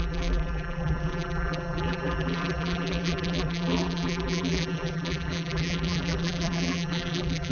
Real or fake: fake